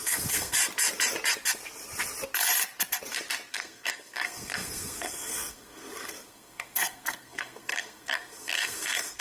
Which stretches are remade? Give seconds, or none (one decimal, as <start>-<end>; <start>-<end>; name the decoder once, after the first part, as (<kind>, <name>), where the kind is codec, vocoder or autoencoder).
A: 0.0-0.6 (codec, SNAC); 3.5-9.2